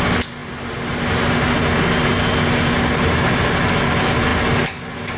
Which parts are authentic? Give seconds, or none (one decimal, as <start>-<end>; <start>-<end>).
0.0-5.2